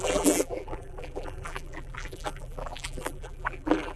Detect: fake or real fake